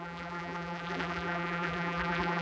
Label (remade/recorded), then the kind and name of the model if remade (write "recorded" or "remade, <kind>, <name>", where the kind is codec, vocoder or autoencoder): remade, vocoder, BigVGAN v2